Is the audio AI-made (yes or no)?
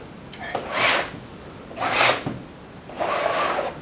no